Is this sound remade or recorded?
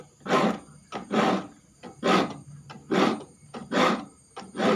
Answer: recorded